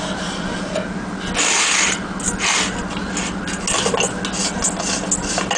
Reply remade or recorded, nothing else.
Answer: recorded